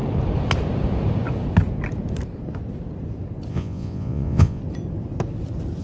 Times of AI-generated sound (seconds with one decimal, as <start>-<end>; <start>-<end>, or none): 3.5-4.6